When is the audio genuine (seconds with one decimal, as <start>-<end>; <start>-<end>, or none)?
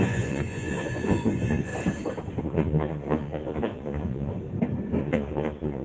1.7-2.4; 4.3-5.0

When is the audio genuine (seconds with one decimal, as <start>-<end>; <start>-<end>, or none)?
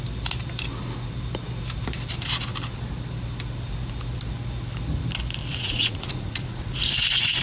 0.0-5.5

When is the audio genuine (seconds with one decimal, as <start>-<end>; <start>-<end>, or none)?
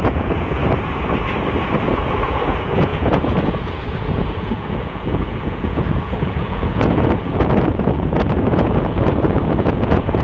0.6-1.8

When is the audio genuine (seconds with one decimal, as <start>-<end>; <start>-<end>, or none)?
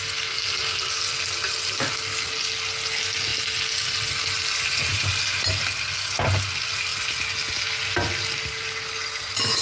0.0-9.6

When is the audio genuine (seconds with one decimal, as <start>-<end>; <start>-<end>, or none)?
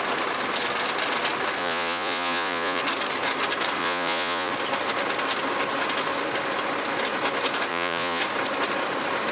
0.0-1.6; 2.8-3.8; 4.5-7.7; 8.2-9.3